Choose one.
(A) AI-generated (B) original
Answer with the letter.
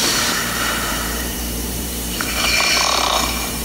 A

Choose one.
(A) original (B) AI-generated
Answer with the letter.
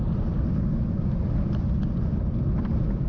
B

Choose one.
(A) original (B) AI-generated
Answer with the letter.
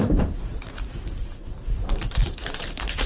B